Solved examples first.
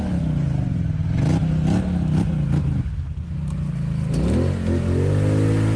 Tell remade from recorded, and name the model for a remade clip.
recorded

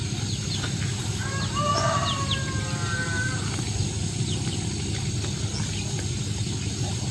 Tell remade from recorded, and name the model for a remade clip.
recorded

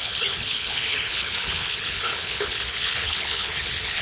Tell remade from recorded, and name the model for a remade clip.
remade, codec, HILCodec